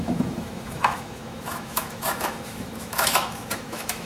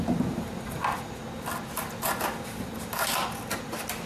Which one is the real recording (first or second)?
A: second